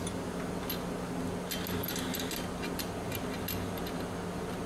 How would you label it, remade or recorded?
recorded